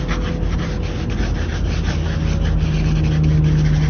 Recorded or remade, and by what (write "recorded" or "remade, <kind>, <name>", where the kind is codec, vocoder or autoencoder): recorded